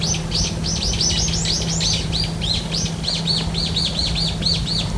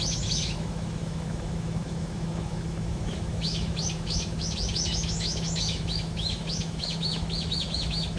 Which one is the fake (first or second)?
second